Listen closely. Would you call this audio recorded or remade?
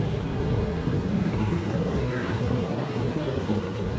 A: remade